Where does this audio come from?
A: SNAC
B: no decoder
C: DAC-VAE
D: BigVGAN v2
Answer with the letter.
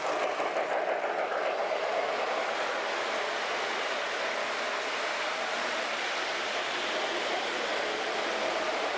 D